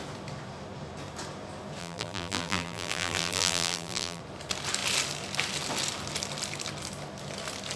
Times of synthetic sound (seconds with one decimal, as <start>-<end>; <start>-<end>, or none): 1.8-4.2

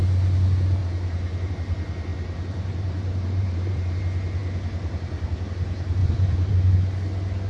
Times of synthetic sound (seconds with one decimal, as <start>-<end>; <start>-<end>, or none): 0.8-1.5; 2.1-4.0; 6.0-6.5

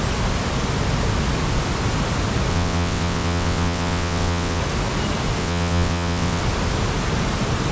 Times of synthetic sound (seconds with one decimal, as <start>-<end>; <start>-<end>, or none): 2.5-4.6; 5.4-6.4

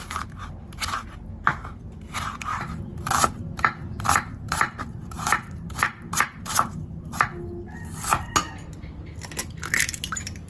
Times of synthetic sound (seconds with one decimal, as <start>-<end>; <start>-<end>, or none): 0.0-2.5; 4.0-7.3; 10.1-10.5

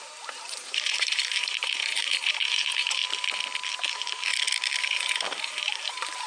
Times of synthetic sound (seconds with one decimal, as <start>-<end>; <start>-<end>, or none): 0.0-3.0; 3.7-4.3; 4.9-6.3

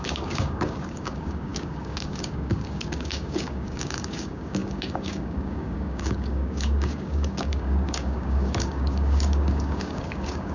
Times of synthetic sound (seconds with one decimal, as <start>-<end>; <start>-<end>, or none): 0.0-10.5

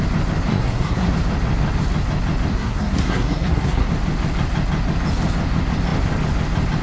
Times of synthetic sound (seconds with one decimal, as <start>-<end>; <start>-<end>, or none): 0.5-1.1; 2.5-3.9